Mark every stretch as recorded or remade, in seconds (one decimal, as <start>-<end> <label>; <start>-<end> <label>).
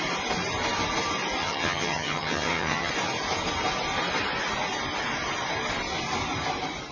0.0-1.4 recorded; 1.4-2.9 remade; 2.9-6.9 recorded